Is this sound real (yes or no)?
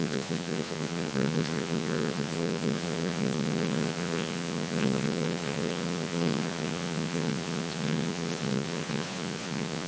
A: no